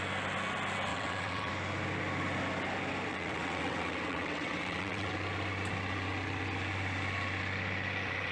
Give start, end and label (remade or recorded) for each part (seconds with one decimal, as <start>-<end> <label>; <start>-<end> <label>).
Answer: 0.0-0.9 recorded; 0.9-1.5 remade; 1.5-3.1 recorded; 3.1-5.1 remade; 5.1-8.3 recorded